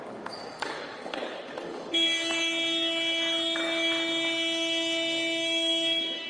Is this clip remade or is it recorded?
remade